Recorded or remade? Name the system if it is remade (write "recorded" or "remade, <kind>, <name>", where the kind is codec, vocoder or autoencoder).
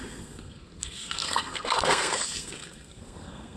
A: remade, codec, SNAC